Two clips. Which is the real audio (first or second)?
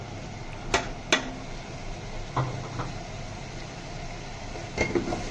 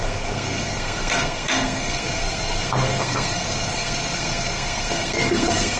first